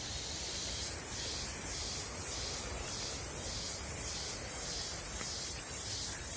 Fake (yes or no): no